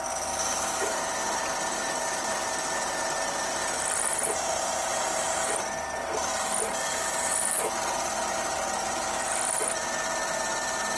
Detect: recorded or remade recorded